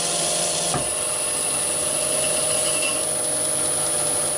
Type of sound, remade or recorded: recorded